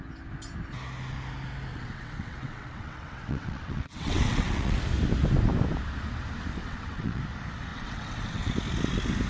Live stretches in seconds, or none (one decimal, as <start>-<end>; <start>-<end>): 0.0-1.7; 4.8-6.6; 7.2-7.7; 8.5-9.3